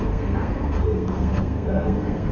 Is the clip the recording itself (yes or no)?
no